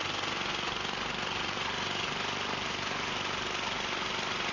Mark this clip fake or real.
real